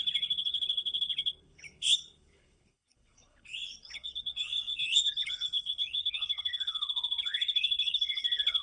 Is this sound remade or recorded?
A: remade